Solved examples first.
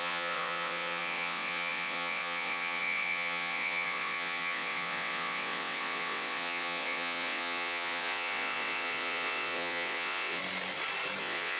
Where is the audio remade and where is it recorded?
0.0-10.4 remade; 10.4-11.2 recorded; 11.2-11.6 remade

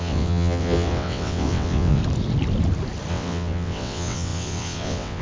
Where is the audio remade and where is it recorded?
0.0-2.0 remade; 2.0-3.1 recorded; 3.1-5.2 remade

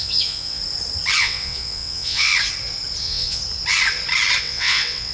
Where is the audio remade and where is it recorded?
0.0-0.6 remade; 0.6-1.2 recorded; 1.2-2.3 remade; 2.3-3.0 recorded; 3.0-3.4 remade; 3.4-4.4 recorded; 4.4-5.1 remade

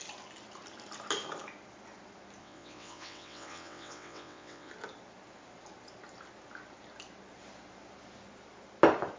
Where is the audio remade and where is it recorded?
0.0-2.4 recorded; 2.4-4.7 remade; 4.7-9.2 recorded

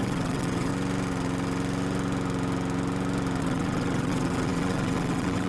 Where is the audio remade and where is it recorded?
0.0-0.7 remade; 0.7-3.4 recorded; 3.4-5.5 remade